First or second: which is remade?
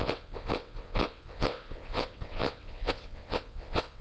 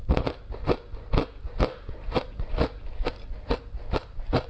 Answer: first